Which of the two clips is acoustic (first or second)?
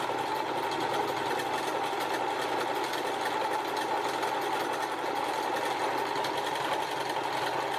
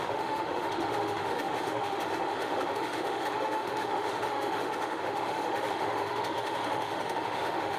first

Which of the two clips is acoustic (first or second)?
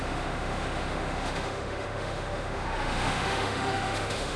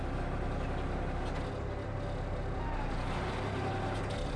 second